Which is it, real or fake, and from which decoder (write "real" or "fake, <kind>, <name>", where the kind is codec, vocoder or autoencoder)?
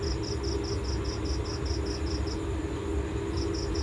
real